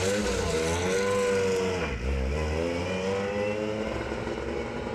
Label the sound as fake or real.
real